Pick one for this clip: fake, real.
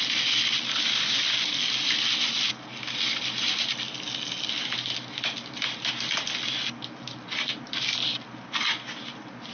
real